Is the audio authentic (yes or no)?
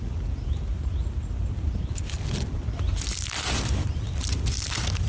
yes